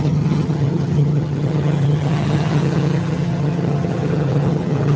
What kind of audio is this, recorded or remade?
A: remade